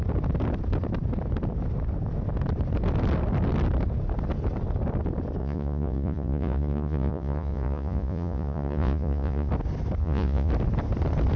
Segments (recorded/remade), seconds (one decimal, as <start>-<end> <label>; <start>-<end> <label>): 0.0-5.4 recorded; 5.4-9.5 remade; 9.5-10.0 recorded; 10.0-10.5 remade; 10.5-11.4 recorded